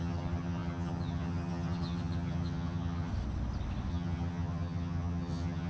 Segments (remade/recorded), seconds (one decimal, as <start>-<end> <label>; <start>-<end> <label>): 0.0-3.1 remade; 3.1-3.9 recorded; 3.9-5.7 remade